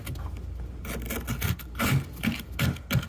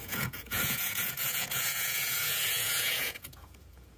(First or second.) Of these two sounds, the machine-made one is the second